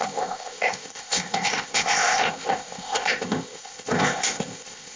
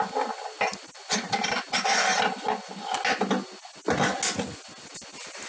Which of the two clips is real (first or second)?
second